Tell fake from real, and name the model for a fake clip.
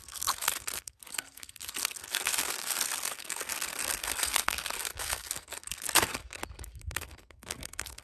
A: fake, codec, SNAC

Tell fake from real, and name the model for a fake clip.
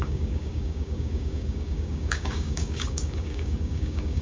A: fake, codec, DAC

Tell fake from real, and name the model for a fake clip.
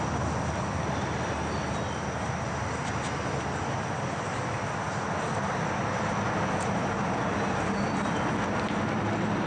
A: real